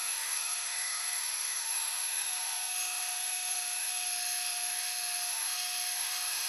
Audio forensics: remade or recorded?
remade